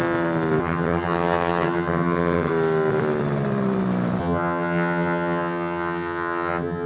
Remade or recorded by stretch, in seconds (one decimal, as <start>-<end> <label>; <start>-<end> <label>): 0.0-0.6 recorded; 0.6-2.5 remade; 2.5-4.2 recorded; 4.2-6.9 remade